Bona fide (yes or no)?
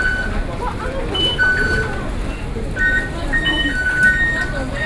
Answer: yes